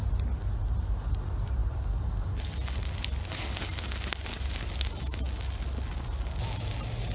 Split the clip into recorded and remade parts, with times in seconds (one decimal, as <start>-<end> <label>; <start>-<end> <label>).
0.0-7.1 recorded